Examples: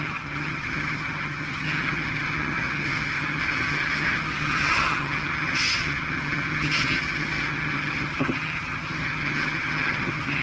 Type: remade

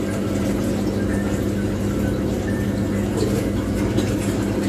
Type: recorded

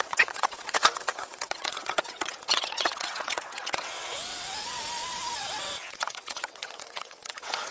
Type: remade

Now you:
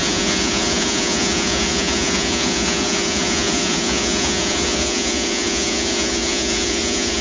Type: remade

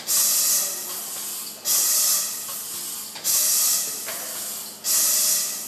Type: recorded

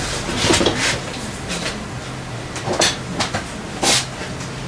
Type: recorded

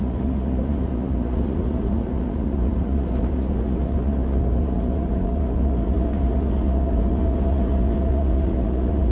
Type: remade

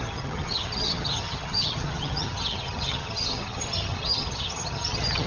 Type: remade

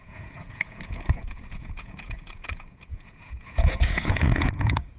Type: remade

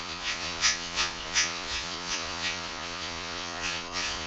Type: remade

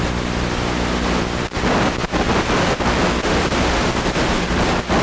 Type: recorded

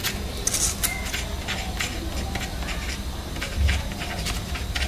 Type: recorded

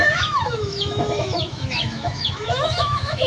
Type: remade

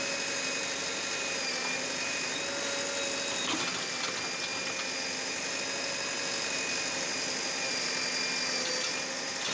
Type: recorded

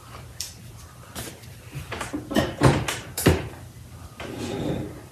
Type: remade